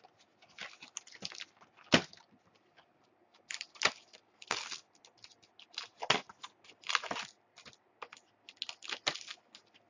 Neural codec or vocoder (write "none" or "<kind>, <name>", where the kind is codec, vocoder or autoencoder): none